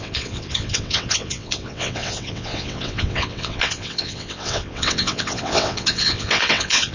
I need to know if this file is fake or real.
fake